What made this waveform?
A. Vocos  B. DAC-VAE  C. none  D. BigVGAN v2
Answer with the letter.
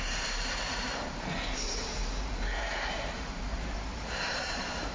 D